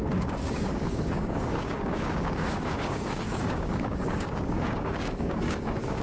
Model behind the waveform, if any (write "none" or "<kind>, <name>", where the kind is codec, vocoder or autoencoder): codec, DAC